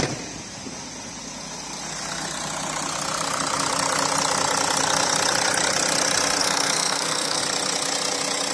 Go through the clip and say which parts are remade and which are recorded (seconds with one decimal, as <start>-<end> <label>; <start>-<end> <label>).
0.0-6.4 recorded; 6.4-7.4 remade; 7.4-8.5 recorded